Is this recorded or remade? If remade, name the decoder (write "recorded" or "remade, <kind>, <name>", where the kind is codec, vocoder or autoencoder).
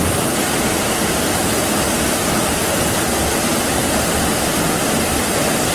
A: recorded